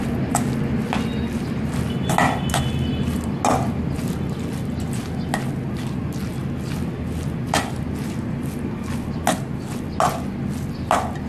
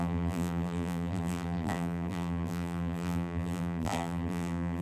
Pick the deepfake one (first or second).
second